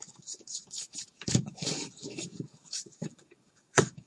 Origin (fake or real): fake